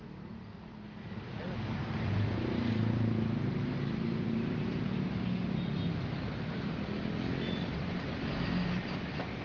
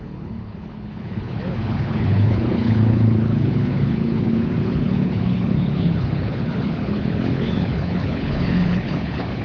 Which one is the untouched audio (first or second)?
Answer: first